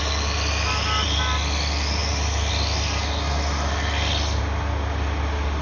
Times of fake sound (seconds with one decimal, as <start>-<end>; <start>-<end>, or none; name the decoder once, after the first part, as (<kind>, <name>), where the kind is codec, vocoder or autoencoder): none